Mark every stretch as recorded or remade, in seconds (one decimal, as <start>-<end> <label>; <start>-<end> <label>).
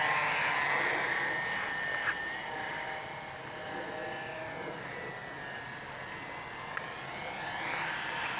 0.0-4.0 recorded; 4.0-4.5 remade; 4.5-8.4 recorded